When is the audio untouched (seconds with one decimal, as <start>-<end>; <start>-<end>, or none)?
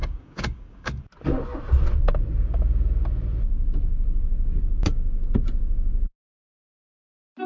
1.0-7.5